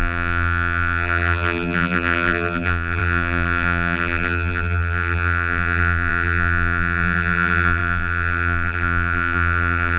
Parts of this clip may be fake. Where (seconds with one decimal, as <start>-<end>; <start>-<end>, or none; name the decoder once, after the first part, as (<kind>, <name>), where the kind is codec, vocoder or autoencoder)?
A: 0.0-10.0 (vocoder, BigVGAN v2)